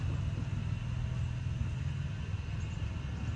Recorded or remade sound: recorded